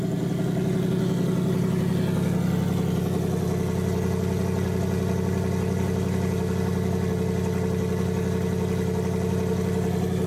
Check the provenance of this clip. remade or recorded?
recorded